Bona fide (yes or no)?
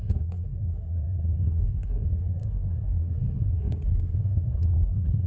no